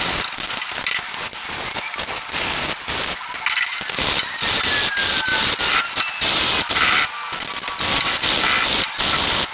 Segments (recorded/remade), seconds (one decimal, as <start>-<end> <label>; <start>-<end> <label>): 0.0-9.5 recorded